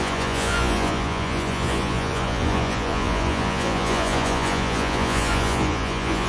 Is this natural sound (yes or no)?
no